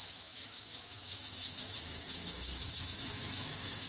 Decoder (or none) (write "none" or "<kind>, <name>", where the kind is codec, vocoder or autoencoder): autoencoder, DAC-VAE